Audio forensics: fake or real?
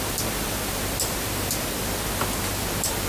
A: real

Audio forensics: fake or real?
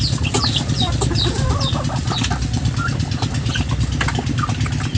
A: real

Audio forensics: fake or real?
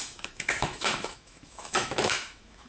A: fake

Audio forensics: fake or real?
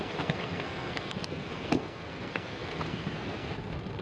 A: fake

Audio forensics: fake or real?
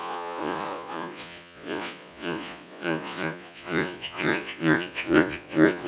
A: fake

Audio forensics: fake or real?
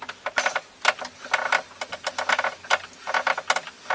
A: real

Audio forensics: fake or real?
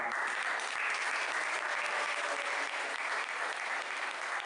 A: real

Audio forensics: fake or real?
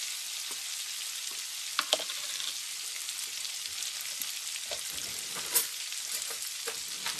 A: real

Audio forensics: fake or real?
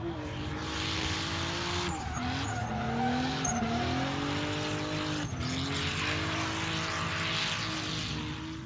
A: real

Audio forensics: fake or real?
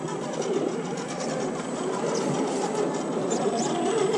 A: real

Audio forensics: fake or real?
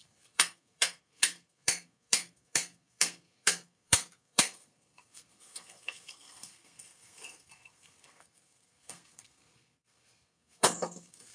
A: fake